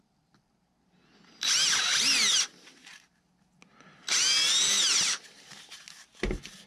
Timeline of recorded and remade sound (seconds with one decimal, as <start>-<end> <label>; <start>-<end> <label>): 0.0-6.7 recorded